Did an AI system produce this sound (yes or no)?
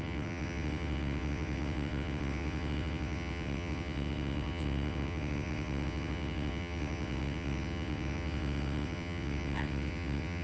yes